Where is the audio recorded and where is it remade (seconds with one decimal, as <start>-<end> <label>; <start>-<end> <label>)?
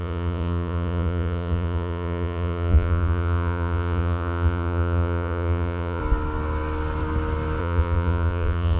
0.0-6.0 remade; 6.0-7.6 recorded; 7.6-8.8 remade